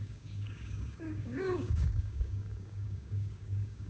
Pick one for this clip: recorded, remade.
remade